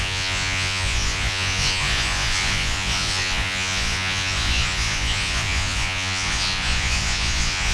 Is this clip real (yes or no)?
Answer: no